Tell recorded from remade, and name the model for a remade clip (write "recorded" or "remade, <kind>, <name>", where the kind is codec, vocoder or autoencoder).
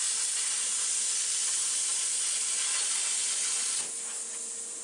recorded